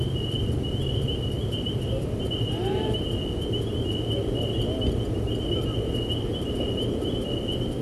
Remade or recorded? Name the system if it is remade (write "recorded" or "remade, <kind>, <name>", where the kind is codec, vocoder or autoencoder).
recorded